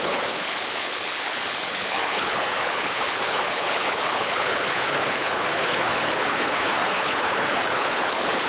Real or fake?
fake